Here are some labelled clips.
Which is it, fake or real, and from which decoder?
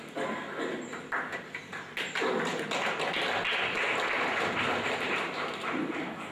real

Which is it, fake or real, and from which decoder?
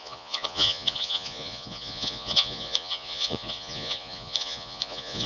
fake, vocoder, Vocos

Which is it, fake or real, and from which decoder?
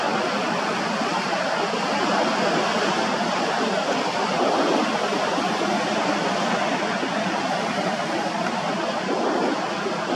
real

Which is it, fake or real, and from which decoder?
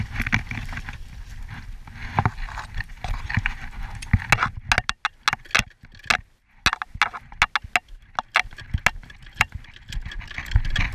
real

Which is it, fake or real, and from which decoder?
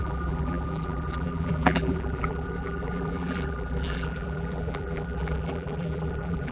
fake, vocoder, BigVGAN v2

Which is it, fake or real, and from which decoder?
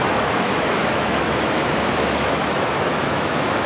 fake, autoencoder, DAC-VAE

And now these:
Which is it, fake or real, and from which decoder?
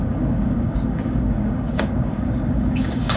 fake, codec, DAC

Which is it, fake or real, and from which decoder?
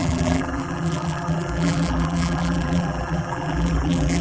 fake, vocoder, BigVGAN v2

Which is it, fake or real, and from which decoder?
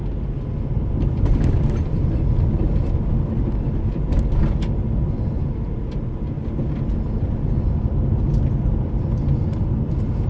real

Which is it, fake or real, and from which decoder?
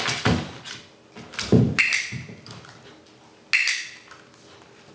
real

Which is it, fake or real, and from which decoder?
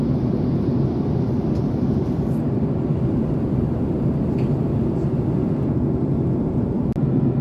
real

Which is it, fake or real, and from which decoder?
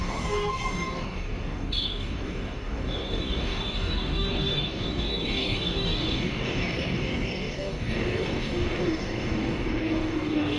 fake, codec, DAC